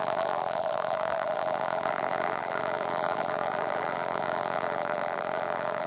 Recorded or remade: remade